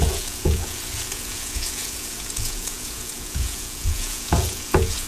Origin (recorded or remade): remade